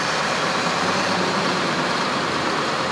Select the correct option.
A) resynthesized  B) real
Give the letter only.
A